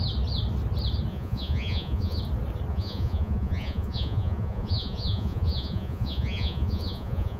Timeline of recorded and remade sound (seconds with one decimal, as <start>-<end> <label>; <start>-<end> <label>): 0.0-1.1 recorded; 1.1-2.2 remade; 2.2-2.7 recorded; 2.7-7.4 remade